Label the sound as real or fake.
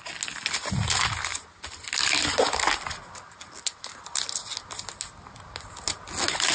real